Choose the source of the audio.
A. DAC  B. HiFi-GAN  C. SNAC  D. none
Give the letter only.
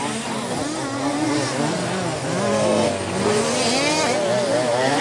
D